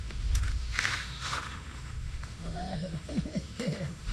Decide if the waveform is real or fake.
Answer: fake